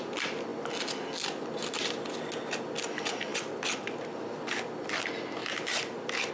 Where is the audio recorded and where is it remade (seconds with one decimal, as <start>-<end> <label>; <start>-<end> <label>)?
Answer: 0.0-5.4 recorded; 5.4-6.3 remade